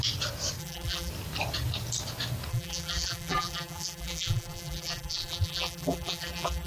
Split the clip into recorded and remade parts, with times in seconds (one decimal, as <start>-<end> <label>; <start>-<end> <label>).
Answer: 0.0-0.6 recorded; 0.6-1.1 remade; 1.1-2.5 recorded; 2.5-6.7 remade